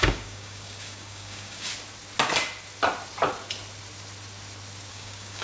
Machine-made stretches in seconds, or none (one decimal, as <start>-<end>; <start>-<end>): 0.0-1.7; 4.9-5.4